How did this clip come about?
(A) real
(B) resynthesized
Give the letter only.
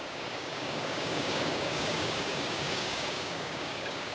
B